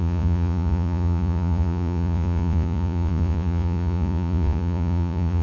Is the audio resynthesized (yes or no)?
yes